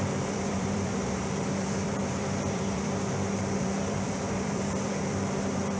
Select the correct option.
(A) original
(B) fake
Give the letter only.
B